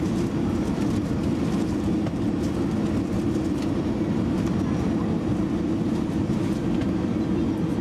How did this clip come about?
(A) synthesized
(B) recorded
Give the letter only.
B